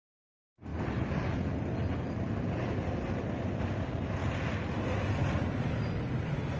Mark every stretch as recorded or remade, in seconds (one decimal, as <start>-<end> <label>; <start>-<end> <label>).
0.0-6.6 recorded